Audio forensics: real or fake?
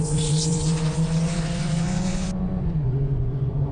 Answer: fake